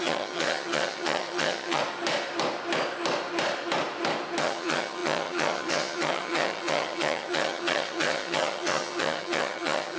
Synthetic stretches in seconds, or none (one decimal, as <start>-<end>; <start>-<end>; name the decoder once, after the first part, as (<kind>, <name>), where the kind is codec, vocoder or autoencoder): 0.0-1.8 (vocoder, HiFi-GAN); 4.4-10.0